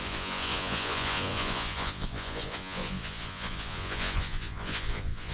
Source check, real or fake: fake